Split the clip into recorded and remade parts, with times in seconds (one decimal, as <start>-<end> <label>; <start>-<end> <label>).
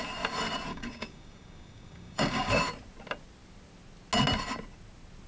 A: 0.0-0.7 recorded; 0.7-2.5 remade; 2.5-5.3 recorded